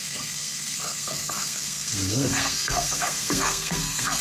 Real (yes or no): no